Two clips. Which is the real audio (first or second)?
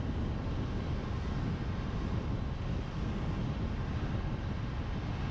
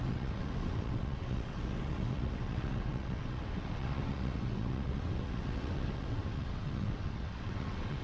first